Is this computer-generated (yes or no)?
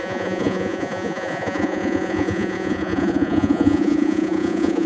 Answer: yes